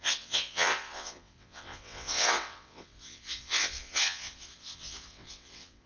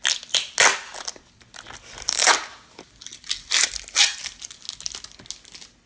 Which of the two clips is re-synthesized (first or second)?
first